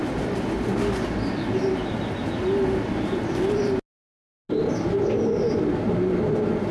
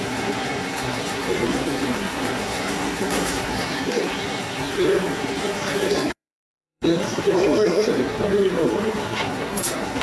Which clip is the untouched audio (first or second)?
first